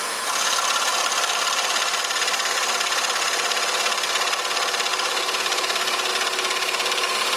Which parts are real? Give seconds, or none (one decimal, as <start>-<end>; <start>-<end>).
0.0-0.9; 2.0-4.9; 6.1-7.4